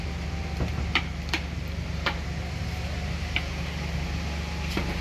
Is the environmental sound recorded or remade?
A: recorded